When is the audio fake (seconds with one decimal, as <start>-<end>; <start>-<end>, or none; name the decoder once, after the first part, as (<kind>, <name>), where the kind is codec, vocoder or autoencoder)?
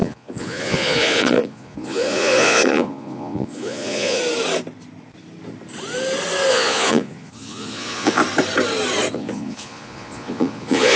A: 0.0-4.2 (vocoder, Vocos); 6.5-8.2; 9.1-11.0